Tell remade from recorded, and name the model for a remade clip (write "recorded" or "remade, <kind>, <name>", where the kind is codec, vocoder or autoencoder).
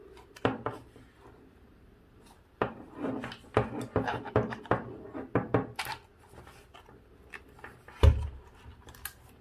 recorded